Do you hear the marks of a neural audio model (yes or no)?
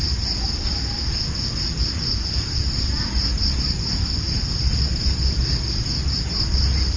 no